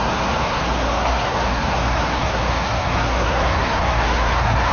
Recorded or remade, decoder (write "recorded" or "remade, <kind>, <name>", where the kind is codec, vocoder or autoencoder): remade, codec, SNAC